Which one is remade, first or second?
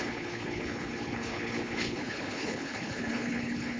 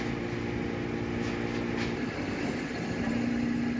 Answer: first